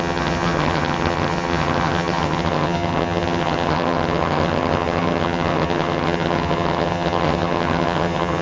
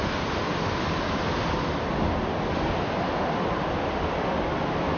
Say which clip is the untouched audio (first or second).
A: second